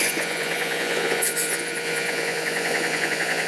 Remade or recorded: remade